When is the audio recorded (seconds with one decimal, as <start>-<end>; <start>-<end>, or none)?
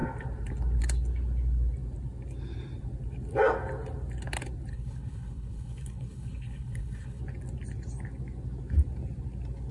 0.0-4.7; 7.2-9.7